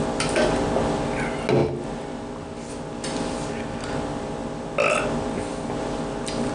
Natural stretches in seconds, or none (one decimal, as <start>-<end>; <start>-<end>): 0.0-6.5